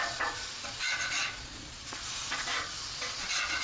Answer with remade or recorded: remade